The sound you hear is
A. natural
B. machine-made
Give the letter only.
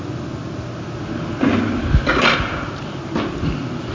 A